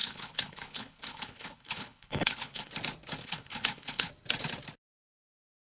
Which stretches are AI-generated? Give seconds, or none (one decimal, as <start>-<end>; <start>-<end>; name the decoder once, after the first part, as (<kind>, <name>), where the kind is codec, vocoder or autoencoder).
0.0-2.7 (codec, HILCodec); 3.2-4.1